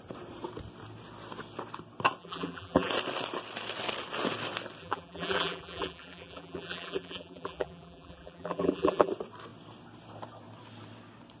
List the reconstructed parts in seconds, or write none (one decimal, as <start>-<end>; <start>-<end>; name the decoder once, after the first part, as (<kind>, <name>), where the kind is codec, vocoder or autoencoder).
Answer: 2.2-2.9 (vocoder, BigVGAN v2); 4.8-9.1